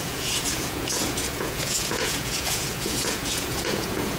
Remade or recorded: remade